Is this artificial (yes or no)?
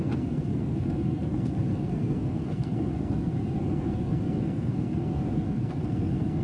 yes